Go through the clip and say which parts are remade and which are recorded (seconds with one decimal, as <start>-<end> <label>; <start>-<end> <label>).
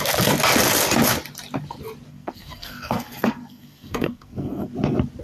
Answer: 0.0-2.1 recorded; 2.1-4.7 remade; 4.7-5.2 recorded